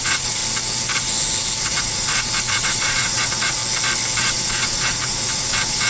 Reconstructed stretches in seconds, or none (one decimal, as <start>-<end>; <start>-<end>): 0.0-0.4; 1.6-3.6; 4.2-5.9